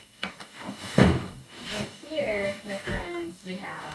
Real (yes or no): no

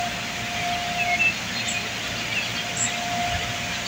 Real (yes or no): yes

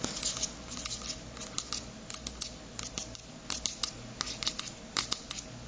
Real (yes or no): yes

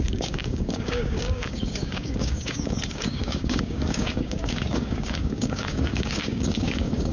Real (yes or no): no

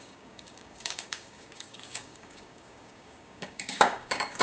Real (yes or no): no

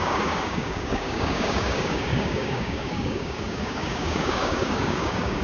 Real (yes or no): no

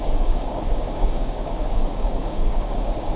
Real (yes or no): no